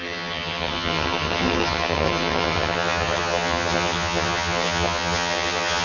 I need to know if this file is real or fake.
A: fake